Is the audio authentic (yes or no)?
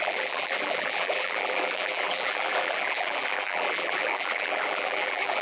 no